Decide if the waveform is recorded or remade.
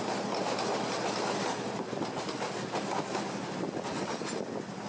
recorded